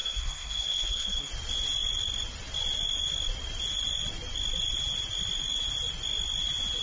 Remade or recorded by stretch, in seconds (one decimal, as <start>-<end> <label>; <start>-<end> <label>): 0.0-1.3 remade; 1.3-6.8 recorded